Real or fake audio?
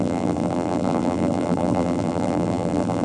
fake